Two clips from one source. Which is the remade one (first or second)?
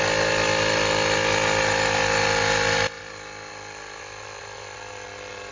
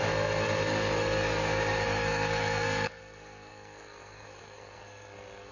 second